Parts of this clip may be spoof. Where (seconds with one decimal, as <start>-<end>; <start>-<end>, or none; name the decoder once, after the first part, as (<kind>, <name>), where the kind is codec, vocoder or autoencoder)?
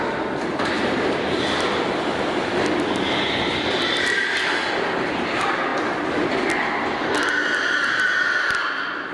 none